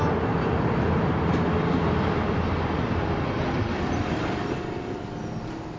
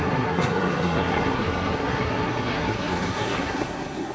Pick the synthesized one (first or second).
second